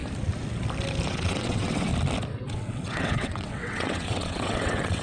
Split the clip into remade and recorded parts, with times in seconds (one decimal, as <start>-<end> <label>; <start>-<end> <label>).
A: 0.0-1.1 recorded; 1.1-1.9 remade; 1.9-2.5 recorded; 2.5-5.0 remade